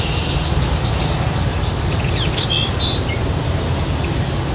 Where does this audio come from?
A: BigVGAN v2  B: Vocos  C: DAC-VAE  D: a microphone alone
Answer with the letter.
D